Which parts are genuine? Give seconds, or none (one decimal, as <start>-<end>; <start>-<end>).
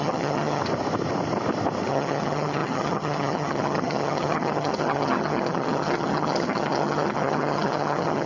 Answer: 0.6-1.9